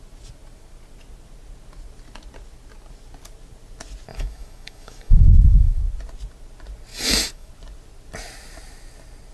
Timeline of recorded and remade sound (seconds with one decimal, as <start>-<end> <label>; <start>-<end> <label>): 0.0-4.1 recorded; 4.1-5.8 remade; 5.8-6.9 recorded; 6.9-7.5 remade; 7.5-9.3 recorded